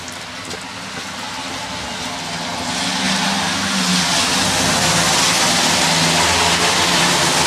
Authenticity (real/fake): real